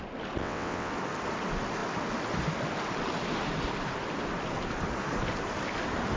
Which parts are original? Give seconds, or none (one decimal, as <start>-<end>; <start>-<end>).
0.0-0.4; 0.9-6.2